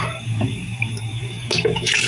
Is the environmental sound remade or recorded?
remade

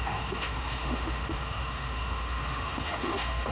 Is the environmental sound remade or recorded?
remade